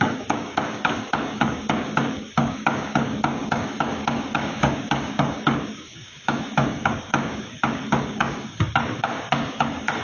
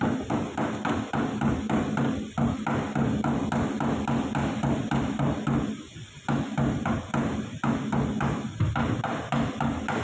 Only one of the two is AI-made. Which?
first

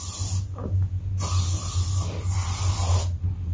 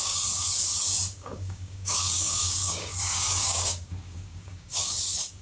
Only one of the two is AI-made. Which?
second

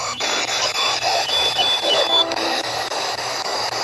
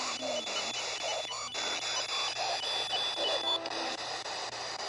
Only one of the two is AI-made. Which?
first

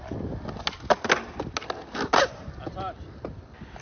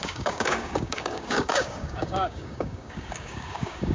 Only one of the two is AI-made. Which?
second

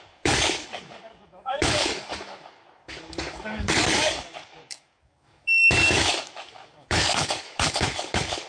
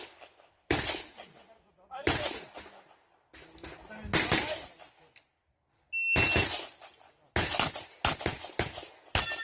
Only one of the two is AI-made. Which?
first